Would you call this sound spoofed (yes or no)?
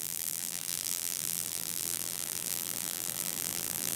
yes